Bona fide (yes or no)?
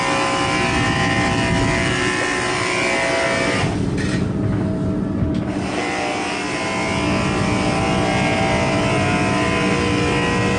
yes